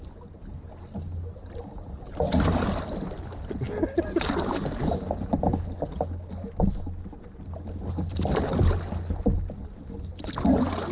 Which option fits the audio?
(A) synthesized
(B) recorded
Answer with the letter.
B